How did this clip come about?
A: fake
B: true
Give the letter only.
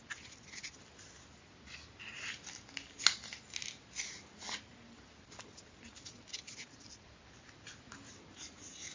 B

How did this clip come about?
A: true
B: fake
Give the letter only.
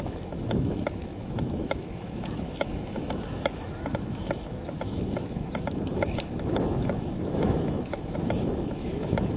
B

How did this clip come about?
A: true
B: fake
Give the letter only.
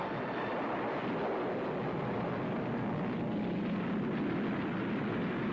A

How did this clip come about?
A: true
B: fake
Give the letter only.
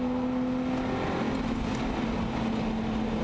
A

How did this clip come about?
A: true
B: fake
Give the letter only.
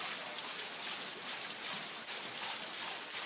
A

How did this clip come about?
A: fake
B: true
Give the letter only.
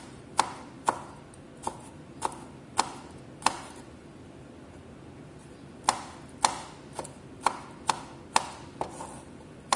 B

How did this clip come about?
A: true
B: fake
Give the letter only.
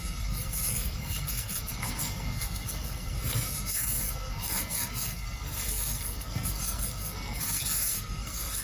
B